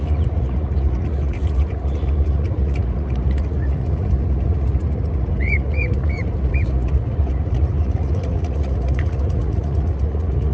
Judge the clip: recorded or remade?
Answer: remade